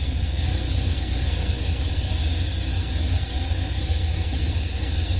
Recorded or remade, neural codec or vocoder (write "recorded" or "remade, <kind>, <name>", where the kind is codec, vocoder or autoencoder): remade, codec, SNAC